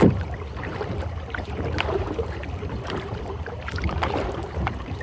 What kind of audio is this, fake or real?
fake